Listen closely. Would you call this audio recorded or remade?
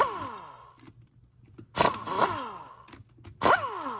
recorded